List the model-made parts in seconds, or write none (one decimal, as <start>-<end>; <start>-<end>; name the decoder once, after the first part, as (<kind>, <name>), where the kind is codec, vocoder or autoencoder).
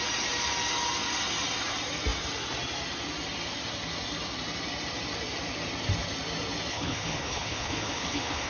6.7-8.5 (codec, HILCodec)